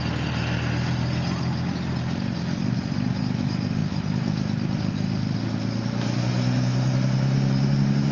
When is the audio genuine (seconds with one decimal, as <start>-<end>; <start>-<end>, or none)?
0.0-8.1